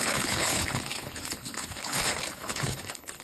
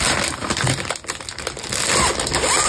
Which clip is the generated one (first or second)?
first